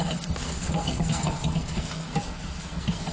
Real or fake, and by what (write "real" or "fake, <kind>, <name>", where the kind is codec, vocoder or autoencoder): fake, codec, SNAC